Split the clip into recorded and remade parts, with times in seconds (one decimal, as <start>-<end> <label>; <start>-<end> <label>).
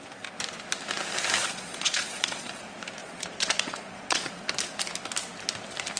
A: 0.0-1.4 recorded; 1.4-2.6 remade; 2.6-3.0 recorded; 3.0-4.3 remade; 4.3-6.0 recorded